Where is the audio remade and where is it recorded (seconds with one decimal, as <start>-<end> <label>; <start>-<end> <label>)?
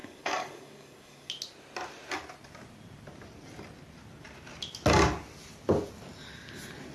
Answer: 0.0-1.3 remade; 1.3-6.9 recorded